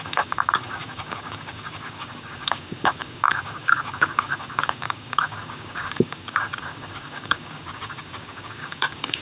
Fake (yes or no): yes